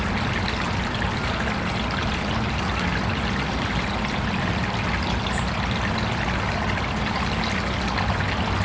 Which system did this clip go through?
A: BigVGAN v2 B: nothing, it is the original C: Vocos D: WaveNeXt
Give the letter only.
B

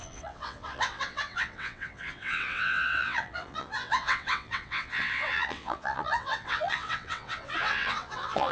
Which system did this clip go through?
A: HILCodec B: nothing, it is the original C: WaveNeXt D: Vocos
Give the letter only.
C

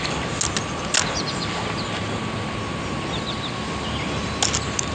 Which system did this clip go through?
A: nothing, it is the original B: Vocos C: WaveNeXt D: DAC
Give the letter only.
A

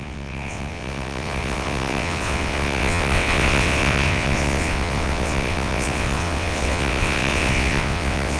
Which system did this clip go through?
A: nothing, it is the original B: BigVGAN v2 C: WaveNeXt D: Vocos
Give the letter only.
C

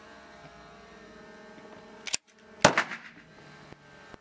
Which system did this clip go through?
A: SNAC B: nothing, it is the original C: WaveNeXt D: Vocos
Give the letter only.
B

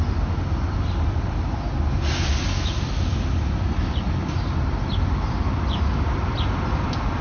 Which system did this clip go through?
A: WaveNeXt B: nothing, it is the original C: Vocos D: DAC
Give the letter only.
B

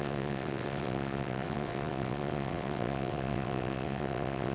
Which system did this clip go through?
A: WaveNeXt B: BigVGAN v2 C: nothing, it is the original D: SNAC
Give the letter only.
A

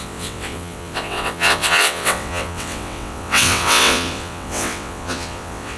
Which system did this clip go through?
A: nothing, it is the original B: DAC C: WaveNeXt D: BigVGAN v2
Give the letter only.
C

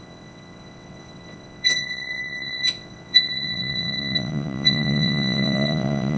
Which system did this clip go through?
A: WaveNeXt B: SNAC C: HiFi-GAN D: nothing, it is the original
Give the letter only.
A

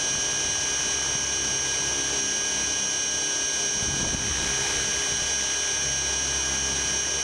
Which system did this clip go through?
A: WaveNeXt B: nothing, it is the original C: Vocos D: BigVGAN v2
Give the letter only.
B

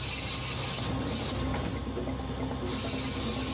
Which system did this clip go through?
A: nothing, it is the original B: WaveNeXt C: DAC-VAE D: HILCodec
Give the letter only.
A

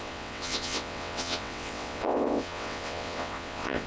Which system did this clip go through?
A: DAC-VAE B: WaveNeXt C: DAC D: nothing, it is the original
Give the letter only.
B